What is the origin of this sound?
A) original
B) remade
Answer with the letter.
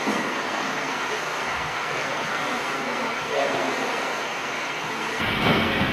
B